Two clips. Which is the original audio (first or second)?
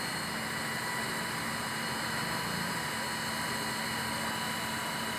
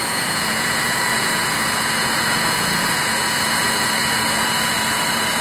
first